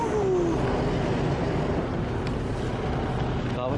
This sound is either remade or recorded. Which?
recorded